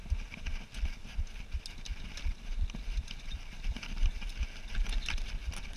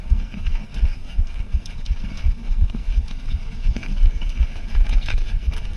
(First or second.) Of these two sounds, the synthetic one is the second